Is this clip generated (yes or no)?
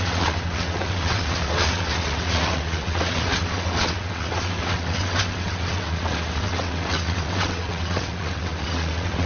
yes